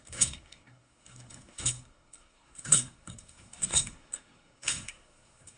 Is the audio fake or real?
fake